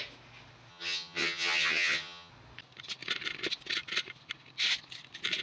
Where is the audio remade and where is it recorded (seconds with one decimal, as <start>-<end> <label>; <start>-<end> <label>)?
0.0-0.7 recorded; 0.7-2.3 remade; 2.3-5.4 recorded